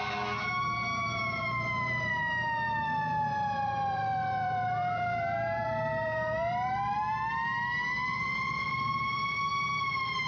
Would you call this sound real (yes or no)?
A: no